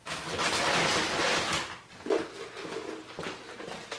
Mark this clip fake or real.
real